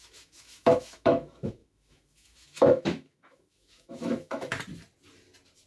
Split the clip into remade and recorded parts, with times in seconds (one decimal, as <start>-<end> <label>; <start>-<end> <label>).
0.0-4.5 remade; 4.5-5.7 recorded